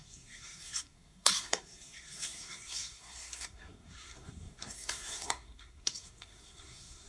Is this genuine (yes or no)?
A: no